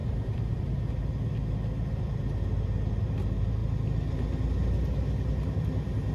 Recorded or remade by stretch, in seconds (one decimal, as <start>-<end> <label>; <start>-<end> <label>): 0.0-0.9 remade; 0.9-6.1 recorded